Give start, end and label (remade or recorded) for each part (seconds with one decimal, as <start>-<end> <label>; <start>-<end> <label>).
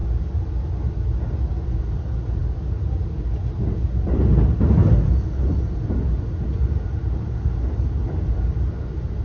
0.0-9.2 recorded